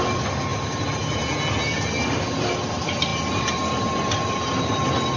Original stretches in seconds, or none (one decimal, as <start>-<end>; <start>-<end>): 0.0-5.2